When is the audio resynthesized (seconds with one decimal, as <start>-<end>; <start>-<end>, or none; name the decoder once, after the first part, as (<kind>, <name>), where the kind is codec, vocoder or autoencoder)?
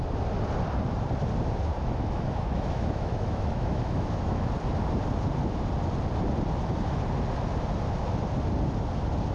1.7-4.5 (autoencoder, DAC-VAE)